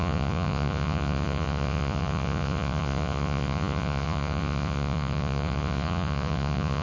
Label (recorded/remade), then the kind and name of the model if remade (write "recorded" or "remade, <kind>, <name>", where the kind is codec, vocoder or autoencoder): remade, vocoder, Vocos